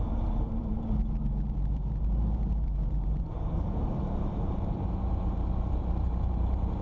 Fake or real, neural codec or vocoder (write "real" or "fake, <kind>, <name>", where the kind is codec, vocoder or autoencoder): fake, vocoder, BigVGAN v2